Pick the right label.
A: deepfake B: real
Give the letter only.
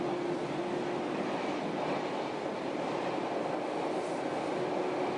B